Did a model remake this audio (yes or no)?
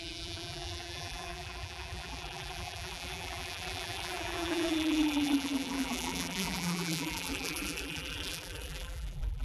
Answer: yes